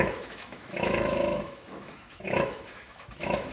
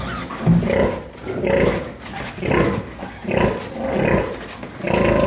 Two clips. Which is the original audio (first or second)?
second